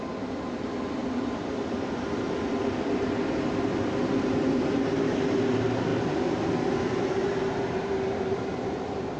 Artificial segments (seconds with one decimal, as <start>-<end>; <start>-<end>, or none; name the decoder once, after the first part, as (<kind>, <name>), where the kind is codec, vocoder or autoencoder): none